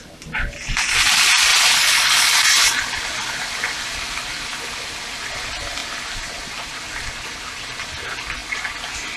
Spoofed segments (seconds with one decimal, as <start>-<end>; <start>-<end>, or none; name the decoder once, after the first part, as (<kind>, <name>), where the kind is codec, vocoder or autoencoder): none